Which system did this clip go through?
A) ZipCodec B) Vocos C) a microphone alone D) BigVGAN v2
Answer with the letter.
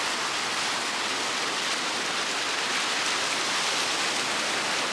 C